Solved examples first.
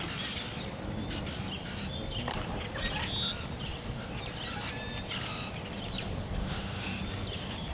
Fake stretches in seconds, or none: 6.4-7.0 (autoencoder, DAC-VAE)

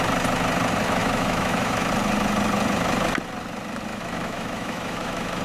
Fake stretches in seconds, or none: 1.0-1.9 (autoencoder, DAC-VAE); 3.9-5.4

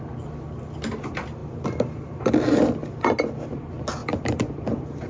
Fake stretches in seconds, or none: 1.4-2.3 (vocoder, BigVGAN v2); 4.0-5.1

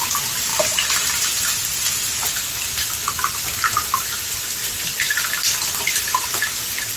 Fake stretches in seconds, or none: 4.6-6.5 (vocoder, BigVGAN v2)

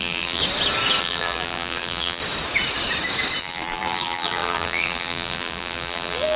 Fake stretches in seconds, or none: 0.0-0.4 (vocoder, BigVGAN v2); 1.0-2.2; 3.4-6.4

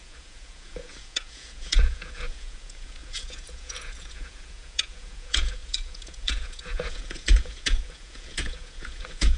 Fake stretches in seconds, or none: 0.0-9.4 (vocoder, Vocos)